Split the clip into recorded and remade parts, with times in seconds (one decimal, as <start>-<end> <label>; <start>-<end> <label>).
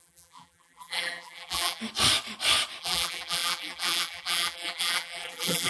0.0-1.8 remade; 1.8-2.8 recorded; 2.8-5.7 remade